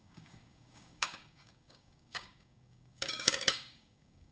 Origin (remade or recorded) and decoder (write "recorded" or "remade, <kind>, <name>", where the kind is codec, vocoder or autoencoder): remade, codec, DAC